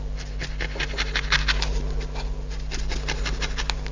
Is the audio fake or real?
real